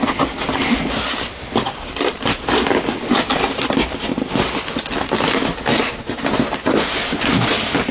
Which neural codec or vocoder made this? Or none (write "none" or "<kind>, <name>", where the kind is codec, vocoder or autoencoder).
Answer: none